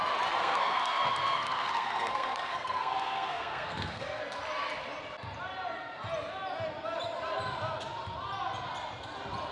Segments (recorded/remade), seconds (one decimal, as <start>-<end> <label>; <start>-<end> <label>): 0.0-0.4 recorded; 0.4-4.2 remade; 4.2-9.5 recorded